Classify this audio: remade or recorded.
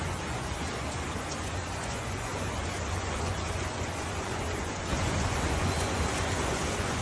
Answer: remade